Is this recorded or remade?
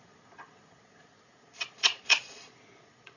remade